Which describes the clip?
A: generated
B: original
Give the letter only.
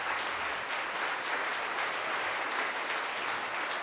B